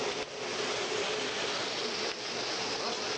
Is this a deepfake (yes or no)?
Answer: no